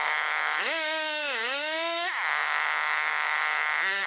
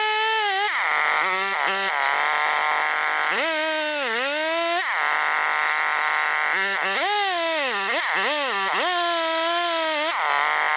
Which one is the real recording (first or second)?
second